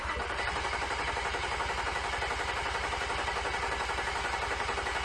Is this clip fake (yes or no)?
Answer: no